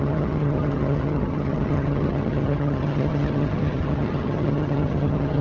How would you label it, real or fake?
fake